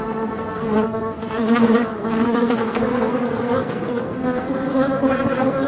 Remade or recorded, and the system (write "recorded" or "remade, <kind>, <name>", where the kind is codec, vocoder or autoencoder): remade, codec, SNAC